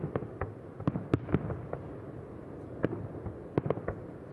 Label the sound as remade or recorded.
recorded